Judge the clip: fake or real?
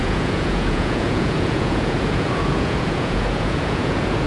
fake